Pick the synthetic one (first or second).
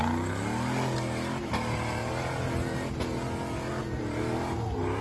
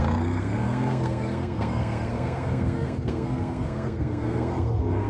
second